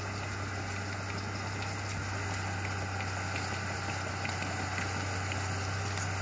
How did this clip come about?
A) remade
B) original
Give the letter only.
B